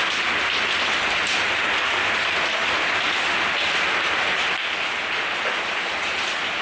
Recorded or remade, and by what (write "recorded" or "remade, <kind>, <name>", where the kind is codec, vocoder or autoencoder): recorded